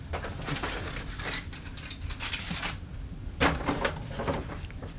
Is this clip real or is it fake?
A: fake